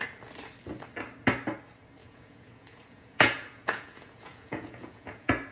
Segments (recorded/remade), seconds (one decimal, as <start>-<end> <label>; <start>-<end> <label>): 0.0-2.0 recorded; 2.0-5.5 remade